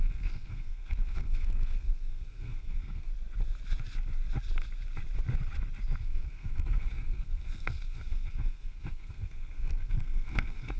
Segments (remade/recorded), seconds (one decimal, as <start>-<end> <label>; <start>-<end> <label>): 0.0-3.1 remade; 3.1-6.0 recorded; 6.0-10.8 remade

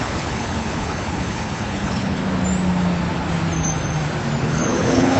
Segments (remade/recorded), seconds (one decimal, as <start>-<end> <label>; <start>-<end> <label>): 0.0-2.2 remade; 2.2-4.4 recorded; 4.4-5.2 remade

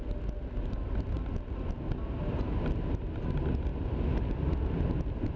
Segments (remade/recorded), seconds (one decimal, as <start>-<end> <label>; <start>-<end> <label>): 0.0-5.4 recorded